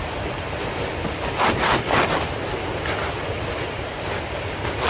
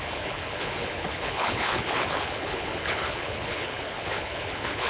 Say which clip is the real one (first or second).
first